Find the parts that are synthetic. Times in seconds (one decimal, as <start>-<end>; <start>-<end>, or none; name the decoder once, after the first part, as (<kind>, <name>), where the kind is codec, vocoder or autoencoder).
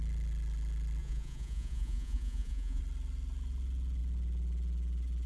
1.0-2.8 (vocoder, Vocos)